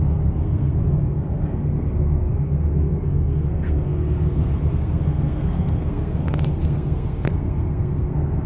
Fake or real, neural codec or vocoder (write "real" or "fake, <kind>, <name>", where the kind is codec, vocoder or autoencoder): fake, codec, SNAC